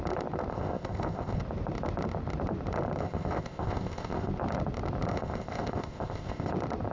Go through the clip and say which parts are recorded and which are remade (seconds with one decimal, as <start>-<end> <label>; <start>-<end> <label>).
0.0-0.5 recorded; 0.5-1.4 remade; 1.4-3.0 recorded; 3.0-4.3 remade; 4.3-5.1 recorded; 5.1-6.5 remade; 6.5-6.9 recorded